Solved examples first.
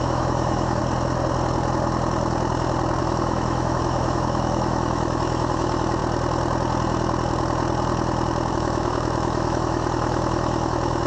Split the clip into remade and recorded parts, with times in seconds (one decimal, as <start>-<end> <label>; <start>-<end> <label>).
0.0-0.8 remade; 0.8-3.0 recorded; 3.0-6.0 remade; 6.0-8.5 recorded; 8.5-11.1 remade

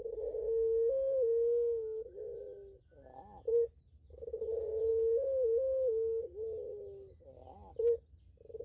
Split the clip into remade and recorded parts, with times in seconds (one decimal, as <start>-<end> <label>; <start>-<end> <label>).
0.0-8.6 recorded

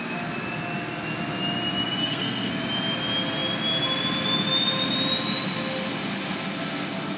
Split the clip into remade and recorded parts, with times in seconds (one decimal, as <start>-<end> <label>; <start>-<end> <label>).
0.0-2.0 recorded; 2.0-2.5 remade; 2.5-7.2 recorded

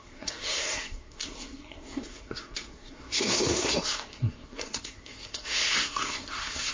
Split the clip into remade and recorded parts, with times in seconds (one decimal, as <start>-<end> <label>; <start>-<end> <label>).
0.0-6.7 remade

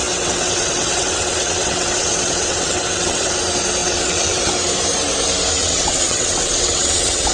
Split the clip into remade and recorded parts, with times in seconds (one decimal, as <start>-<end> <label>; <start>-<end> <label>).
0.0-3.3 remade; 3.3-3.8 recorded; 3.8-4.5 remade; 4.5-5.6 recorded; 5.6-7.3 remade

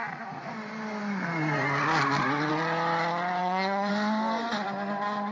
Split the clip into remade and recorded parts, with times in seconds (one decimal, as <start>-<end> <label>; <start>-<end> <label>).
0.0-3.4 recorded; 3.4-3.9 remade; 3.9-5.3 recorded

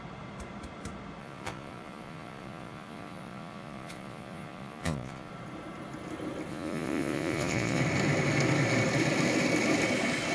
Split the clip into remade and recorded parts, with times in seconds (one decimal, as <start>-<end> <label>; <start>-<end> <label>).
0.0-1.2 recorded; 1.2-5.3 remade; 5.3-6.5 recorded; 6.5-7.8 remade; 7.8-10.3 recorded

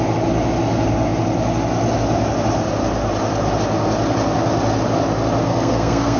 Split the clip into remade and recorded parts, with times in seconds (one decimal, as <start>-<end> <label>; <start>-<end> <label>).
0.0-5.4 recorded; 5.4-6.2 remade